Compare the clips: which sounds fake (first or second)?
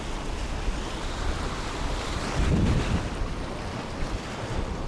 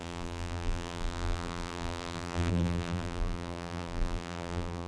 second